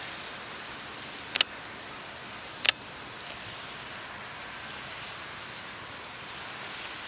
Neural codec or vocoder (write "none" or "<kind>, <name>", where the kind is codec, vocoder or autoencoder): none